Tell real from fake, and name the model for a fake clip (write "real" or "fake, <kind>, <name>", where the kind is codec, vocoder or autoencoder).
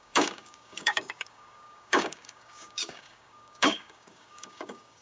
fake, codec, DAC